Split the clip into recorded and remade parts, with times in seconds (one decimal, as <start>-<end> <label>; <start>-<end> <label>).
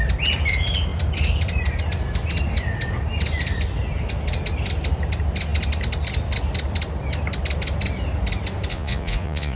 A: 0.0-8.7 recorded; 8.7-9.6 remade